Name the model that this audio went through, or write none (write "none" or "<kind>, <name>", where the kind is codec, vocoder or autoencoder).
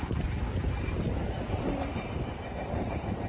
vocoder, BigVGAN v2